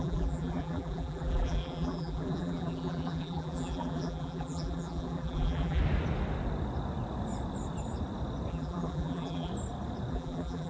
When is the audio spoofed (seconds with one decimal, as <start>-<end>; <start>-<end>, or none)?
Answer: 0.0-5.8; 8.5-9.5; 10.1-10.7